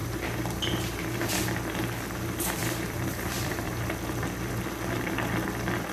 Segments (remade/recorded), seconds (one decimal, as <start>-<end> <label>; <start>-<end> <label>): 0.0-1.3 remade; 1.3-2.6 recorded; 2.6-4.5 remade; 4.5-5.9 recorded